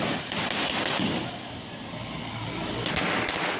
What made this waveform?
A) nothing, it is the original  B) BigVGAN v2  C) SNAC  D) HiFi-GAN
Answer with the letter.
A